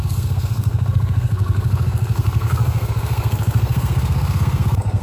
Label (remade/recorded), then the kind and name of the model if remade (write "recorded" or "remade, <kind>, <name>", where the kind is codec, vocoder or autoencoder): remade, codec, SNAC